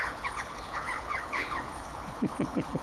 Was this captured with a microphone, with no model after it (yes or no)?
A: no